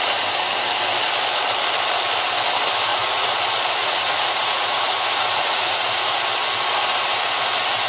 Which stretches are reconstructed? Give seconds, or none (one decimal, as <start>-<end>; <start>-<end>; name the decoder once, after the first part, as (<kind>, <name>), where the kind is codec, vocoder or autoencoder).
2.9-3.4 (vocoder, Vocos); 3.8-6.2